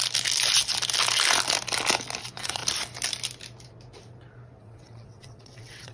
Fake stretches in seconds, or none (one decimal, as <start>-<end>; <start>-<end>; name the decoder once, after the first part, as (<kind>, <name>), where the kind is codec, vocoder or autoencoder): 2.2-2.6 (vocoder, WaveNeXt); 4.6-5.9